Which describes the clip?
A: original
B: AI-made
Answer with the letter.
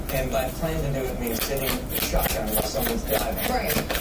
A